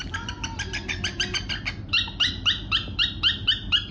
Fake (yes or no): no